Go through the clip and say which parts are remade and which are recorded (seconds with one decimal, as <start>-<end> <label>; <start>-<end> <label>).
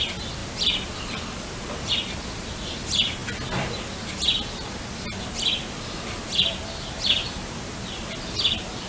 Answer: 0.0-8.9 recorded